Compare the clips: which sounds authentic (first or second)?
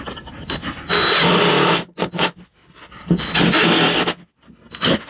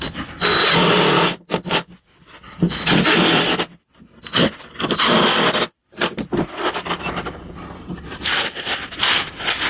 first